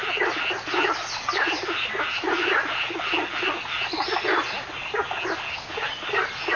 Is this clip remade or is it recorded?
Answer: recorded